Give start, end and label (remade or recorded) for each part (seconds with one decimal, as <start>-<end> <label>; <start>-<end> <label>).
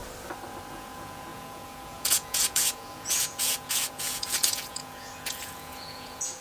0.0-0.7 recorded; 0.7-6.4 remade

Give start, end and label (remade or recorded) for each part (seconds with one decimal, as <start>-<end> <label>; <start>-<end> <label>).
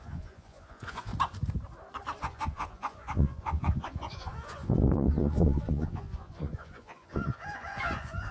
0.0-1.1 remade; 1.1-2.2 recorded; 2.2-8.3 remade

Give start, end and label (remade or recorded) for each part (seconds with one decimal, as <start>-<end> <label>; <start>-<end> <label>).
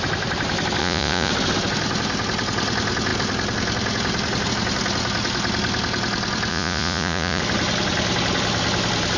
0.0-0.8 recorded; 0.8-1.3 remade; 1.3-6.5 recorded; 6.5-7.4 remade; 7.4-9.2 recorded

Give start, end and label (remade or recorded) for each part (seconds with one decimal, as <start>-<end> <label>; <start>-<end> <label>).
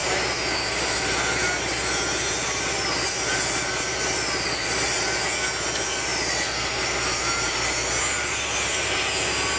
0.0-9.6 recorded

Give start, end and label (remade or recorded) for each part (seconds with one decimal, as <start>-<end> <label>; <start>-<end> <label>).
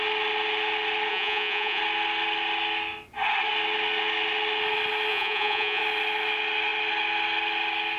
0.0-1.1 recorded; 1.1-1.8 remade; 1.8-5.1 recorded; 5.1-5.8 remade; 5.8-8.0 recorded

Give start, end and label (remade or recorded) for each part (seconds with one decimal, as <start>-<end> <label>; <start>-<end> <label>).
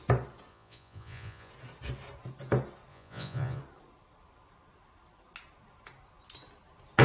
0.0-0.5 recorded; 0.5-1.5 remade; 1.5-2.9 recorded; 2.9-3.6 remade; 3.6-7.0 recorded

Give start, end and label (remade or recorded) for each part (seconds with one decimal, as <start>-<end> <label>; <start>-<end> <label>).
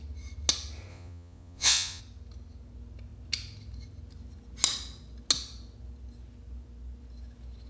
0.0-0.9 recorded; 0.9-2.0 remade; 2.0-7.7 recorded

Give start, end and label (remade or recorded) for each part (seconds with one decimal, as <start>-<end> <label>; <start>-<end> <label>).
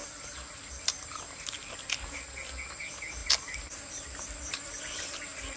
0.0-5.6 recorded